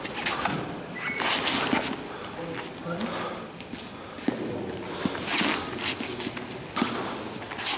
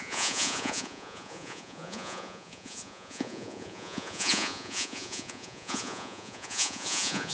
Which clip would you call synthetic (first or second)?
second